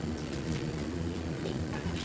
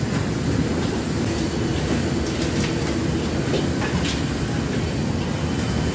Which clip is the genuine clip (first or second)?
second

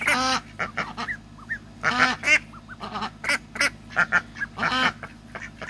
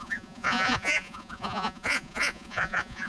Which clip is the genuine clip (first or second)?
first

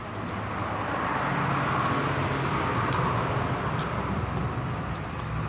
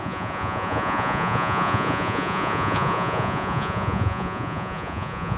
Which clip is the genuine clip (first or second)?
first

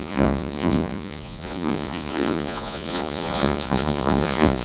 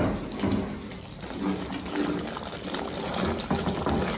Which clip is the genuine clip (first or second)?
second